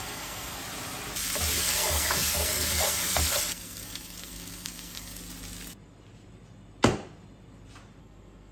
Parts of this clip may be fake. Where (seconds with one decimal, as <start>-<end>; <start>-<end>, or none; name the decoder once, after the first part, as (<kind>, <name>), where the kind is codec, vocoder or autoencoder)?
0.0-0.6 (codec, SNAC); 1.6-5.2; 8.0-8.5

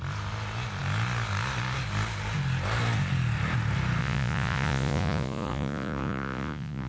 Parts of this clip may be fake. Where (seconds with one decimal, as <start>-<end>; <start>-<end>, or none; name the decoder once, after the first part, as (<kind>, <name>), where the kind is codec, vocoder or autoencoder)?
4.0-6.9 (vocoder, Vocos)

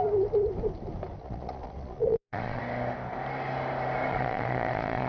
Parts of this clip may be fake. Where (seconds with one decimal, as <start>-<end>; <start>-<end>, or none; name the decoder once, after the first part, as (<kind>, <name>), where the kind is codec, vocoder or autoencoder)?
1.2-2.6 (vocoder, Vocos); 4.1-5.1

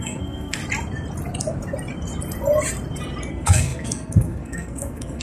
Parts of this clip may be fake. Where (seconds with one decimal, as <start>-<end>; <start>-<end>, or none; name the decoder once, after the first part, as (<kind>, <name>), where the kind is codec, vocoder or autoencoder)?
0.0-0.6 (codec, SNAC); 3.3-5.2

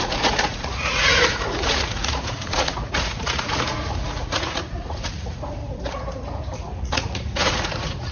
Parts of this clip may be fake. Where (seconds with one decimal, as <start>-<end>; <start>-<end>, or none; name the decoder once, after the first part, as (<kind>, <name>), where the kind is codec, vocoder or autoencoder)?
0.0-5.6 (vocoder, Vocos); 6.8-8.1

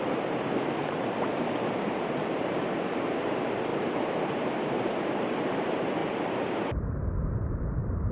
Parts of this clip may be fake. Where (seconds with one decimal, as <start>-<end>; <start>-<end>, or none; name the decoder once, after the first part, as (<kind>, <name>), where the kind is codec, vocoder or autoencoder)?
0.0-8.1 (vocoder, BigVGAN v2)

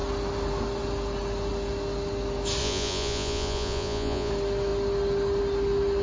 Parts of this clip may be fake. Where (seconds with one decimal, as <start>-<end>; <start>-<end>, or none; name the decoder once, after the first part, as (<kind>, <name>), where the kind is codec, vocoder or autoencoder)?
2.6-4.3 (vocoder, Vocos)